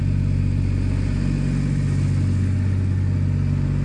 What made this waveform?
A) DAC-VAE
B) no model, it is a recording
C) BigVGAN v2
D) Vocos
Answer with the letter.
B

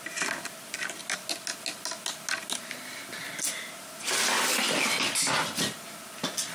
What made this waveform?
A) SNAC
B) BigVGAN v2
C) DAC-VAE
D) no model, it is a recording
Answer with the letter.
D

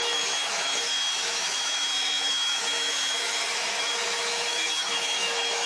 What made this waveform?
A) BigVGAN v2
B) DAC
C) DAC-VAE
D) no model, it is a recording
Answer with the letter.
C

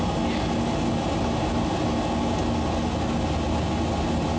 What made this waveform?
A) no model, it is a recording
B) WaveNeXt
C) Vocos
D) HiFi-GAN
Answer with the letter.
A